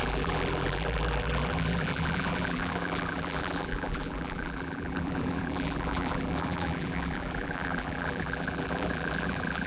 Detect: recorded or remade remade